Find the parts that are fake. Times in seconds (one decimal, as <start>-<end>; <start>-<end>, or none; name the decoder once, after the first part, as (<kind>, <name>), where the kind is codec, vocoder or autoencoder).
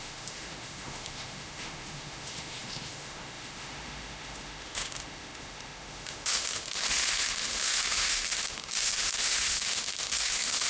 0.0-10.7 (autoencoder, DAC-VAE)